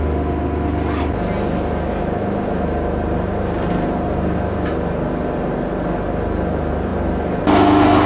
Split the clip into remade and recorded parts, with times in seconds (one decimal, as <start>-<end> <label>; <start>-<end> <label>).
0.0-8.1 recorded

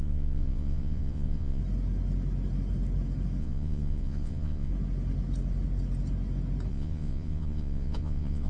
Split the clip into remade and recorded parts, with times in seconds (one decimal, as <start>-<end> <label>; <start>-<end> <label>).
0.0-1.6 remade; 1.6-3.4 recorded; 3.4-4.7 remade; 4.7-6.7 recorded; 6.7-8.5 remade